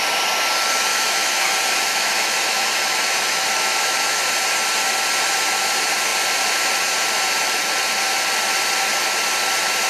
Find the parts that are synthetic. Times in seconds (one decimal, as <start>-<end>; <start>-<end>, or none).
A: 0.9-1.4; 1.9-4.2